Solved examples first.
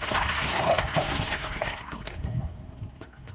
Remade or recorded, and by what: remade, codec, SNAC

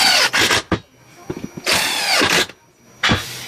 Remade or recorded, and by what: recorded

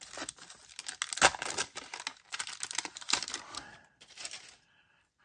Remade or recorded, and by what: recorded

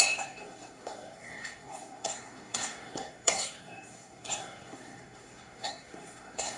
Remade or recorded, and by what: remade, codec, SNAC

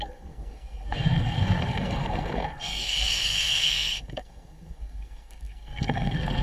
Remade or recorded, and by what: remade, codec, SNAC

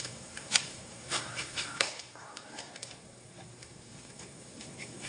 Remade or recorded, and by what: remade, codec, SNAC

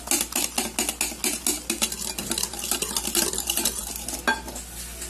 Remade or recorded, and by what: recorded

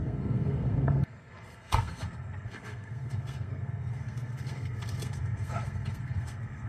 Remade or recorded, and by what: remade, codec, SNAC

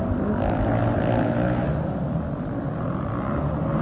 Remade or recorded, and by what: recorded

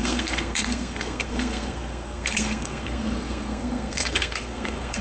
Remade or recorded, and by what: remade, codec, SNAC